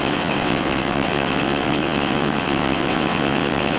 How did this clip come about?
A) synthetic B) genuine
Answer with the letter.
A